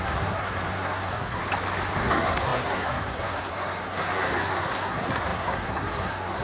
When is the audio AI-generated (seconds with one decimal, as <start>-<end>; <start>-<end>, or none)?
0.0-1.4; 2.0-6.4

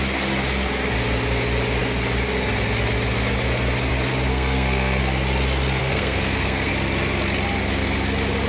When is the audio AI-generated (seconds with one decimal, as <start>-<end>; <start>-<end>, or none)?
4.3-5.0; 5.8-6.7

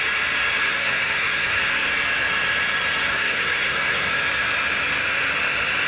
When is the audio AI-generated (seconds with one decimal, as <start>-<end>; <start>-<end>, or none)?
0.6-1.9; 3.0-4.1

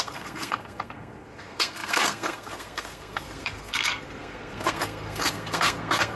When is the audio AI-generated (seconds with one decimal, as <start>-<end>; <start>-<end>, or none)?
0.0-6.2

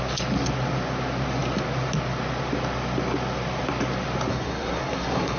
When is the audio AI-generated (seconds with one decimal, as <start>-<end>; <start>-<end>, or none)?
4.3-5.4